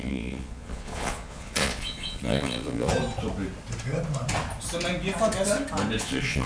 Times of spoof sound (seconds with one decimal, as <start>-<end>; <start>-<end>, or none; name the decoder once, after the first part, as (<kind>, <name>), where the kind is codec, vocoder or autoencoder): 0.0-2.9 (vocoder, Vocos); 6.0-6.5